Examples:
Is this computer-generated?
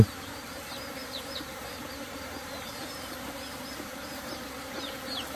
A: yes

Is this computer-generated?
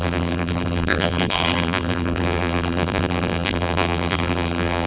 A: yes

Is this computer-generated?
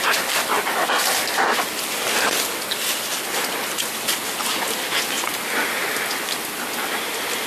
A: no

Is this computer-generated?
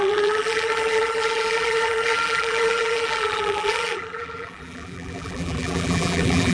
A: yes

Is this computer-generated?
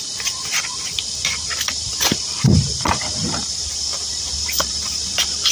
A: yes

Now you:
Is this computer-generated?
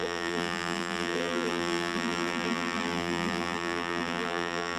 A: yes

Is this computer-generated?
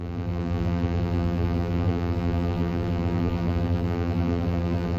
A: yes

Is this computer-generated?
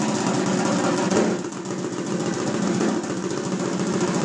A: no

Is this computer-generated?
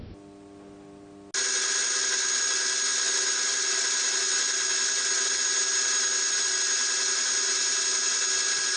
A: no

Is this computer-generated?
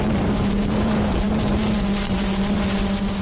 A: yes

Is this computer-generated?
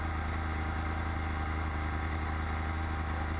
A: no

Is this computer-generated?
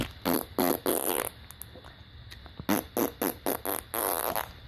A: no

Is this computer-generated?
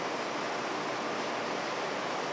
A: no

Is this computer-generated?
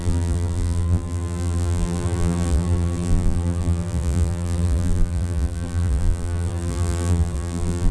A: yes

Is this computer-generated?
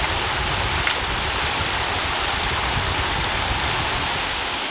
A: yes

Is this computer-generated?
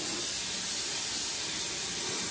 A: no